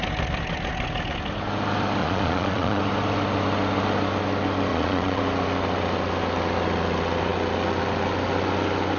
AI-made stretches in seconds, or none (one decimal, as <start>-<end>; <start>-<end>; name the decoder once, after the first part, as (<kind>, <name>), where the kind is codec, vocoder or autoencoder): 2.0-2.8 (vocoder, Vocos); 4.7-5.2